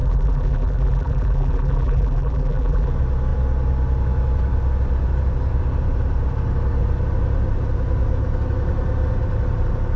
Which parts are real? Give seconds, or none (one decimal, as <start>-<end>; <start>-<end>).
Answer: 2.9-10.0